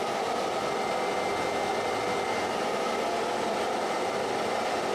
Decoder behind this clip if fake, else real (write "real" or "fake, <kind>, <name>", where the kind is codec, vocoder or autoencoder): real